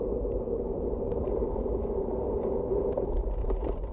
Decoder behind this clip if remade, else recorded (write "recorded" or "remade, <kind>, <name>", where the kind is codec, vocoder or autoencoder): remade, vocoder, BigVGAN v2